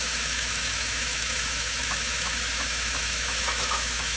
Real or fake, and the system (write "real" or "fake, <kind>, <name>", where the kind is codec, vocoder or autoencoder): fake, autoencoder, DAC-VAE